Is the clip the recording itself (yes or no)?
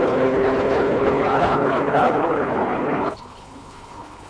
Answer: no